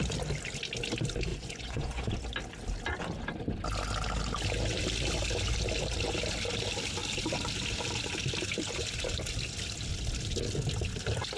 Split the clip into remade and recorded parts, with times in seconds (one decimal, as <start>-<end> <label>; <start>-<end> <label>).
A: 0.0-1.3 recorded; 1.3-2.1 remade; 2.1-11.4 recorded